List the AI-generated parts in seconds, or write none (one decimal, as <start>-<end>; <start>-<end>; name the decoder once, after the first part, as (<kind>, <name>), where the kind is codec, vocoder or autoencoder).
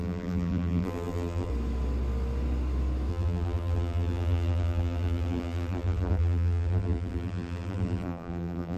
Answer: 0.0-1.5 (vocoder, BigVGAN v2); 3.1-8.8